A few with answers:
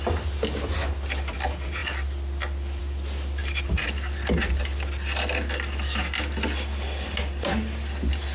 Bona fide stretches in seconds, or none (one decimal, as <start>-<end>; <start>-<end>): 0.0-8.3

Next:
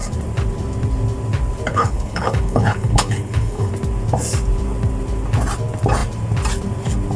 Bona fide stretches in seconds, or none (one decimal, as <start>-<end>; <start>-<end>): 0.0-1.7; 3.7-7.2

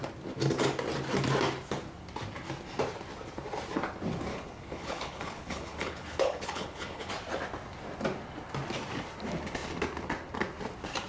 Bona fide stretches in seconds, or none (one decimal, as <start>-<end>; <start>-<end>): 0.0-4.3; 7.1-11.1